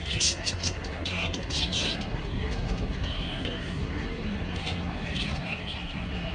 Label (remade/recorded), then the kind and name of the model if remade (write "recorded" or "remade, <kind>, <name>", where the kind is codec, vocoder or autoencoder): remade, codec, SNAC